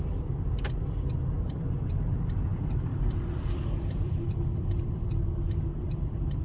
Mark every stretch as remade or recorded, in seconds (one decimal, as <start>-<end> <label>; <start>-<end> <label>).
0.0-2.5 recorded; 2.5-6.4 remade